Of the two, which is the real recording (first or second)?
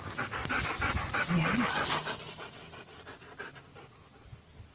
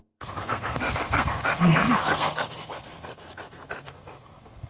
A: first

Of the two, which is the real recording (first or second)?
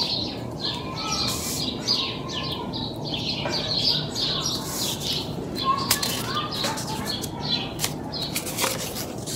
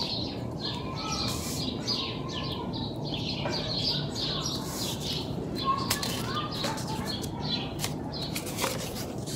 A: first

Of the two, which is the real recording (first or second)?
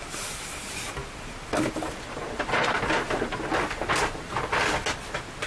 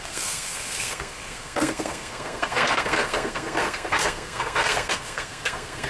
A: first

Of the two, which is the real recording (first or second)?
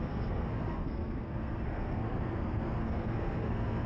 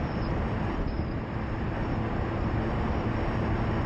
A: second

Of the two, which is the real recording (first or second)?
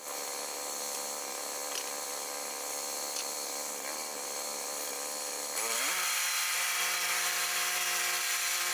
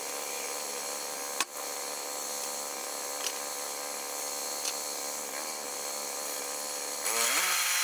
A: second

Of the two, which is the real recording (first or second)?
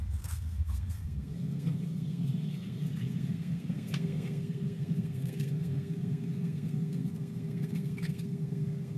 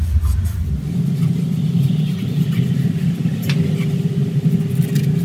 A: second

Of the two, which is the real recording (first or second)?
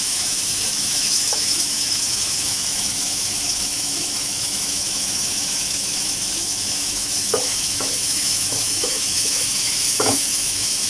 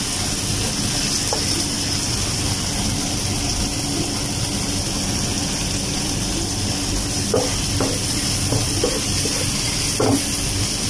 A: second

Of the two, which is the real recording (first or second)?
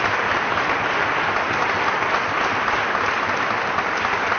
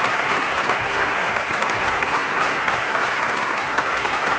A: first